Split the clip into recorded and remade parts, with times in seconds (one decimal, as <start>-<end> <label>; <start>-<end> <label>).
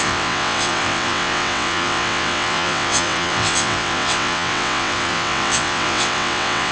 0.0-6.7 remade